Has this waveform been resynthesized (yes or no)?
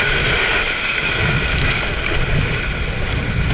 no